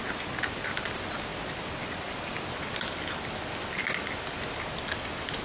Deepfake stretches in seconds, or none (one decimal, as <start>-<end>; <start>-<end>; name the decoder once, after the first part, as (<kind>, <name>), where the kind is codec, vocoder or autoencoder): none